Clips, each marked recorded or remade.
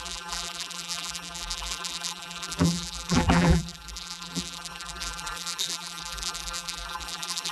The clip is remade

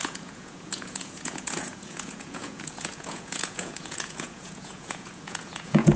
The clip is remade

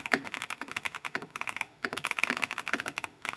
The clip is remade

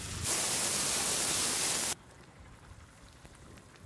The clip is recorded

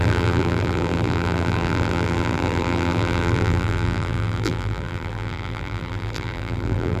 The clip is remade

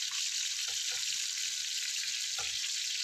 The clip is recorded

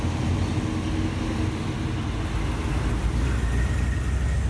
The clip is recorded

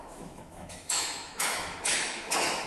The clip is remade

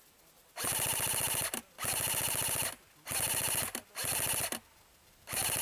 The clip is recorded